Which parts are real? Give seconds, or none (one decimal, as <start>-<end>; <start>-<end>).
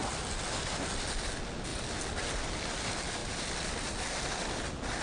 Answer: 0.0-5.0